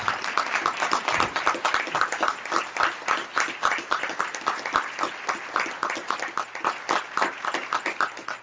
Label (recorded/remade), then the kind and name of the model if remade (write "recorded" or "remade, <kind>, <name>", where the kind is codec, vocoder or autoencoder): recorded